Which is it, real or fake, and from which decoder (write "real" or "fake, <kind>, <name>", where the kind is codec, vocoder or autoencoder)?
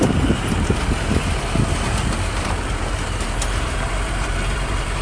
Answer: fake, vocoder, BigVGAN v2